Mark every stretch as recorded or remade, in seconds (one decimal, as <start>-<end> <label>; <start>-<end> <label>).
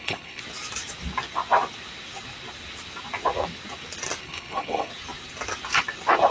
0.0-0.4 remade; 0.4-4.2 recorded; 4.2-4.9 remade; 4.9-6.3 recorded